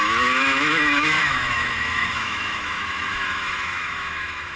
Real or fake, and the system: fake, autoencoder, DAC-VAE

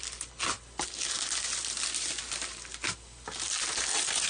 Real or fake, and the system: real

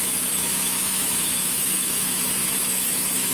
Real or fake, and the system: fake, autoencoder, DAC-VAE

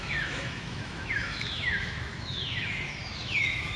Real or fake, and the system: fake, autoencoder, DAC-VAE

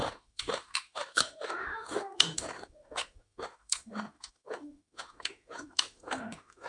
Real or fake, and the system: fake, autoencoder, DAC-VAE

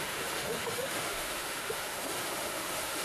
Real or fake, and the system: fake, autoencoder, DAC-VAE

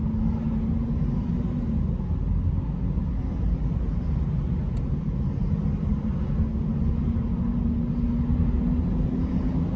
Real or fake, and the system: real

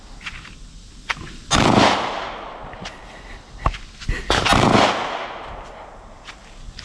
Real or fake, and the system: real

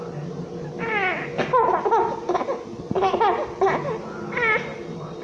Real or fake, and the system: real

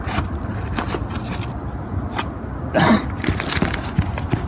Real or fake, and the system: real